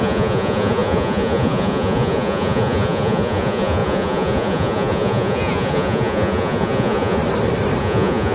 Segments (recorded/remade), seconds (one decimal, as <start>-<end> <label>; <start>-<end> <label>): 0.0-7.2 remade; 7.2-7.8 recorded; 7.8-8.3 remade